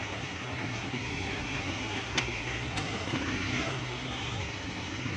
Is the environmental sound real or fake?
fake